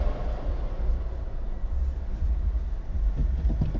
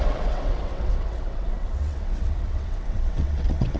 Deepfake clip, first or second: second